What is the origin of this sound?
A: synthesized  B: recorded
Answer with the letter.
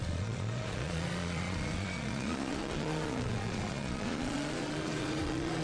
A